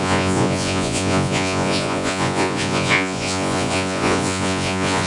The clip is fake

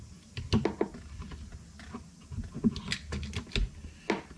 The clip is real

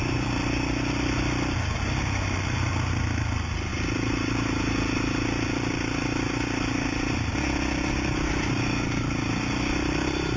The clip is real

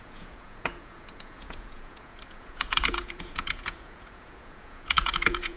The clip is fake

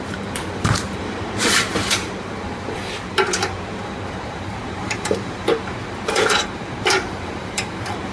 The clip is fake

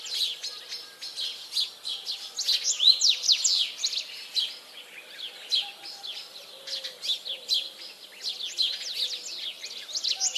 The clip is real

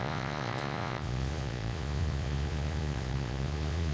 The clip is fake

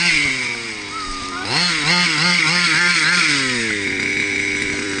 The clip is fake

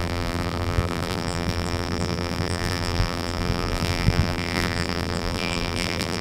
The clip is fake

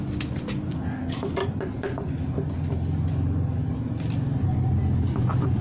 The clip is real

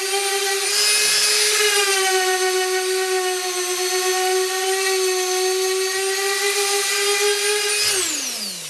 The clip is real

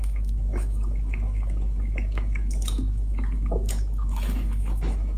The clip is fake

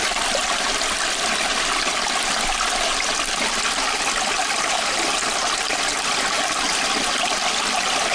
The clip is real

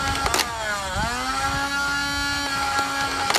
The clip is real